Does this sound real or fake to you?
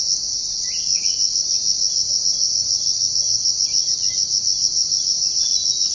real